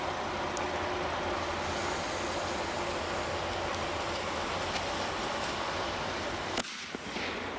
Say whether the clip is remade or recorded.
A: recorded